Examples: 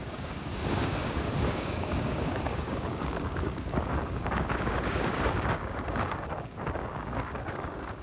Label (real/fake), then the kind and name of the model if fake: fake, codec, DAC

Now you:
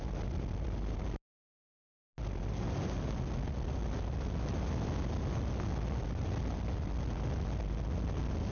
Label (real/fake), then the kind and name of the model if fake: real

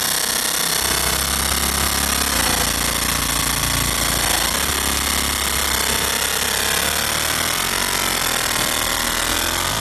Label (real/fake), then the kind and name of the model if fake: real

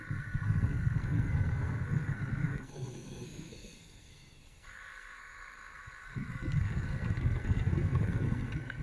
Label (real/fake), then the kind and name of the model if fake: fake, codec, SNAC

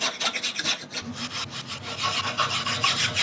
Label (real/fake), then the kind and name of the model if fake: real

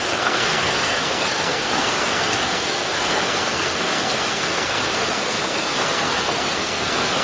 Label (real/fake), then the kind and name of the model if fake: fake, codec, SNAC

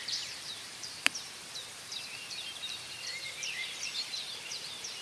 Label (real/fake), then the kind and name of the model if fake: fake, vocoder, BigVGAN v2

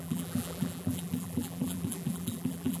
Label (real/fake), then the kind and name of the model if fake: fake, vocoder, BigVGAN v2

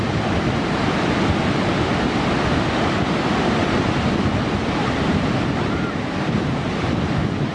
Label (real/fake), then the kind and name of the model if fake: fake, vocoder, BigVGAN v2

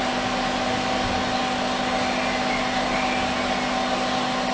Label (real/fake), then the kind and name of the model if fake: real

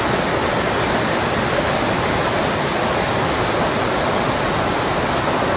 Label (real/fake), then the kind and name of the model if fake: real